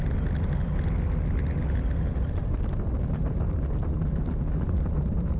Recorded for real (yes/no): yes